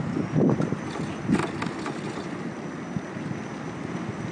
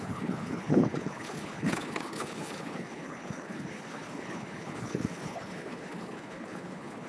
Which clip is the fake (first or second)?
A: second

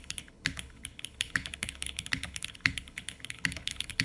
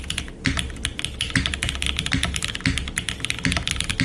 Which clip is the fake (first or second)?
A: first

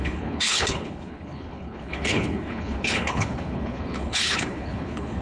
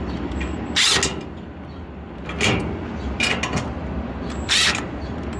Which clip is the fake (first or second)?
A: first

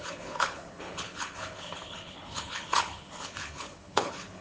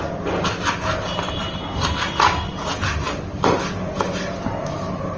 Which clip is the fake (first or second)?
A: first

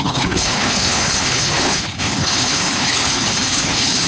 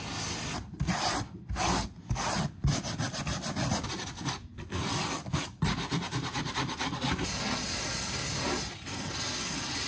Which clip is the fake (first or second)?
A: first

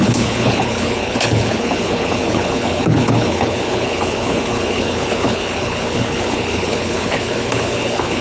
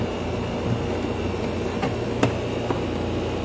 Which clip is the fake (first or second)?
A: first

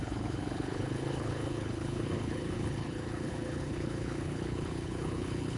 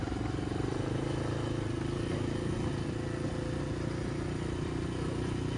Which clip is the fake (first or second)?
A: first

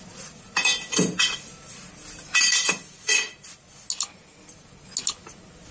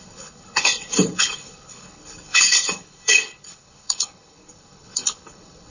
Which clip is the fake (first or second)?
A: second